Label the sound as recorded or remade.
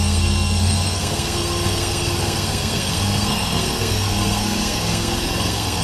remade